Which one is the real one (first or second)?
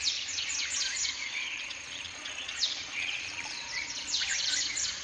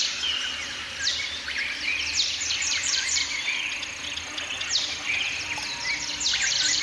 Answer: second